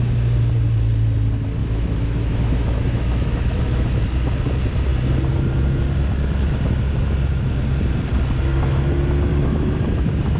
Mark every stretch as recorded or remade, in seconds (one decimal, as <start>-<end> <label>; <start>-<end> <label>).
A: 0.0-1.6 recorded; 1.6-4.0 remade; 4.0-9.3 recorded; 9.3-9.8 remade; 9.8-10.4 recorded